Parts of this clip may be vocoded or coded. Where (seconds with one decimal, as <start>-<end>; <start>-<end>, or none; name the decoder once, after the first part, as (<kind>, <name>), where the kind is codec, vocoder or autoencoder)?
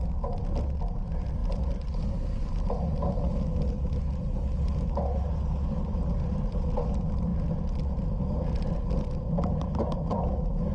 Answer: none